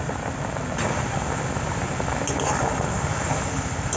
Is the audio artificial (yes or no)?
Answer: no